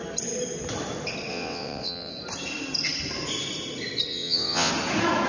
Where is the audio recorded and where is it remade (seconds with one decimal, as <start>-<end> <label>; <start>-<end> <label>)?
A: 0.0-1.3 recorded; 1.3-2.1 remade; 2.1-4.1 recorded; 4.1-4.7 remade; 4.7-5.3 recorded